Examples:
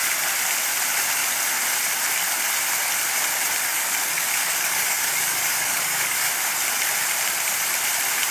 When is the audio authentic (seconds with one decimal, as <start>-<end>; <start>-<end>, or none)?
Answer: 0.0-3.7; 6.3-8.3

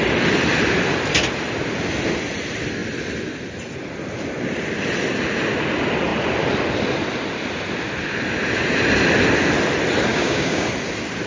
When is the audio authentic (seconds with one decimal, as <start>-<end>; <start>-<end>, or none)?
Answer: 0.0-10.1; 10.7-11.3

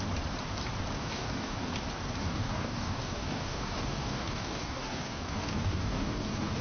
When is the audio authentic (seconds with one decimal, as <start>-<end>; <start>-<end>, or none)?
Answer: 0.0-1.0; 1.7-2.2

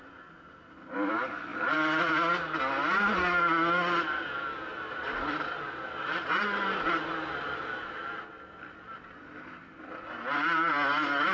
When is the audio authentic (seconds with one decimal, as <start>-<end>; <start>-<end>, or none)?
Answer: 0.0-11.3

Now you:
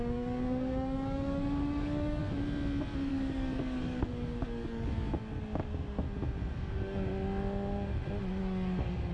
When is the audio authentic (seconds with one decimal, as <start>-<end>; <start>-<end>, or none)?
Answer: 2.2-3.1; 5.2-6.5; 7.1-8.4

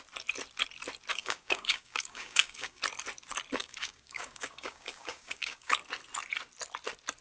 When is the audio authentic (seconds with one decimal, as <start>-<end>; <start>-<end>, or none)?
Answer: 0.0-1.1; 2.8-3.6; 5.7-7.2

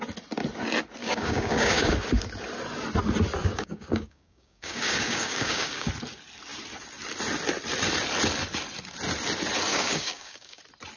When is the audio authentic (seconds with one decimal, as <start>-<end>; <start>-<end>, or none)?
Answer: 0.0-1.0; 1.9-3.4; 5.9-9.7; 10.6-11.0